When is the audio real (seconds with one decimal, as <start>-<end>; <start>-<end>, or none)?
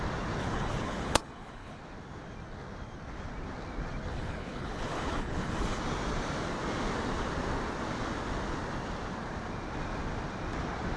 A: 0.0-0.4; 1.8-4.1; 5.8-11.0